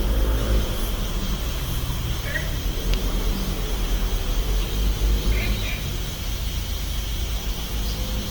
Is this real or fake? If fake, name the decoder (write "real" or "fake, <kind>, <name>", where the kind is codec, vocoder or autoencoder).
real